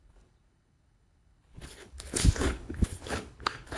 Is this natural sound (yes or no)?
no